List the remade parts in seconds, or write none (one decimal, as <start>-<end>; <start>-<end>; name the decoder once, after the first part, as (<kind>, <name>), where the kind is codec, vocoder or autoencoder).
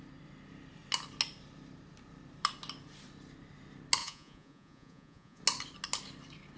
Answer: 4.0-5.4 (vocoder, Vocos)